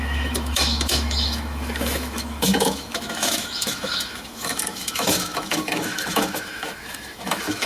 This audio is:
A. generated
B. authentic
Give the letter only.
A